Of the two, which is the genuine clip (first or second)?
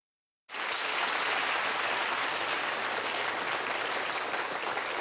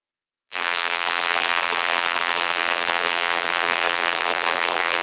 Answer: first